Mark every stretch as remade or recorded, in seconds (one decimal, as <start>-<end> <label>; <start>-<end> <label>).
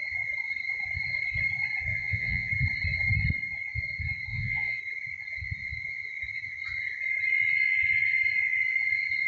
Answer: 0.0-1.9 recorded; 1.9-2.5 remade; 2.5-4.3 recorded; 4.3-4.8 remade; 4.8-9.3 recorded